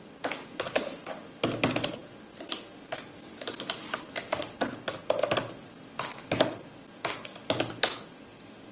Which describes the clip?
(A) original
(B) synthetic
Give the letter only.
A